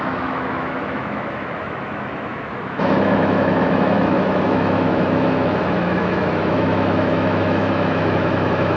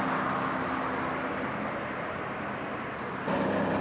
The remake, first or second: first